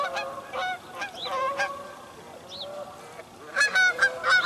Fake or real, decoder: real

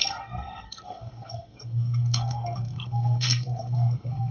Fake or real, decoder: fake, codec, SNAC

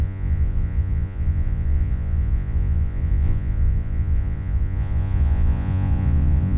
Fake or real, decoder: fake, vocoder, Vocos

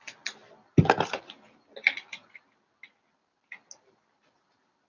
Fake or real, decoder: real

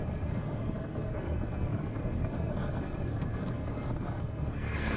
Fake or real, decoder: fake, codec, SNAC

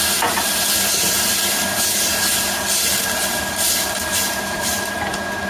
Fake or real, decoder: real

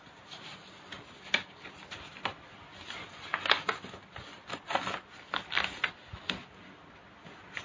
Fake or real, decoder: real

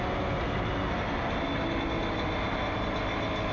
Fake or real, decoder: real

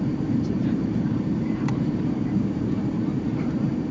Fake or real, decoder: fake, vocoder, BigVGAN v2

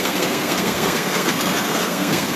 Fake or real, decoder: fake, codec, SNAC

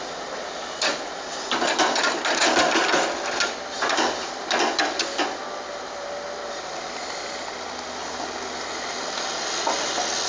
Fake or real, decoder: real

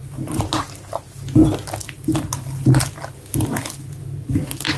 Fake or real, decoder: real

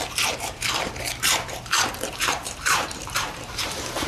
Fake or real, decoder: fake, vocoder, BigVGAN v2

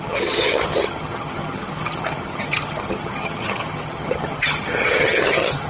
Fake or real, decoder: fake, vocoder, HiFi-GAN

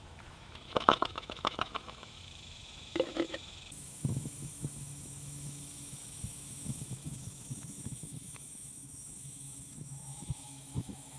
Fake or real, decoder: fake, autoencoder, DAC-VAE